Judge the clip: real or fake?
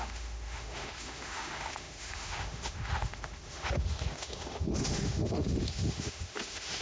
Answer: fake